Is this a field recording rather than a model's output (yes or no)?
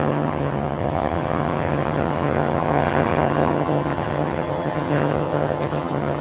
no